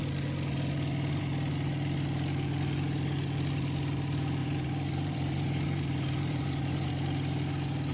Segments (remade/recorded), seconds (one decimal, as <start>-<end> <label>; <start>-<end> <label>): 0.0-4.4 recorded; 4.4-6.9 remade; 6.9-7.9 recorded